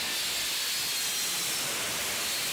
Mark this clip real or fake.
real